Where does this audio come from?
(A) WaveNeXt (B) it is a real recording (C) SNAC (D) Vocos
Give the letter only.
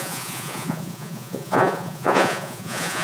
D